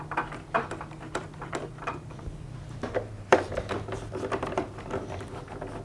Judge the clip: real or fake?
fake